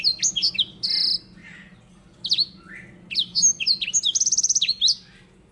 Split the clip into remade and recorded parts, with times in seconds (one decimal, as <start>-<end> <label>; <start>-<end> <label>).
0.0-5.5 recorded